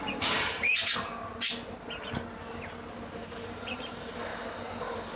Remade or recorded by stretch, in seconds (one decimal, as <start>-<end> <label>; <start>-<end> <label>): 0.0-0.8 remade; 0.8-3.2 recorded; 3.2-4.3 remade; 4.3-4.8 recorded; 4.8-5.2 remade